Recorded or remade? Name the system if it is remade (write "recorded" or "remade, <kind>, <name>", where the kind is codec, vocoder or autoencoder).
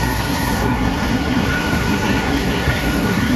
remade, codec, SNAC